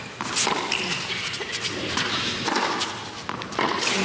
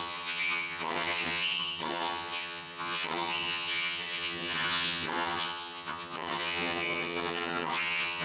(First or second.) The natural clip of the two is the first